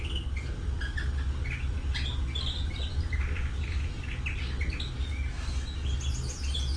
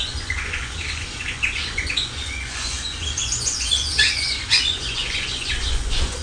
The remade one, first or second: second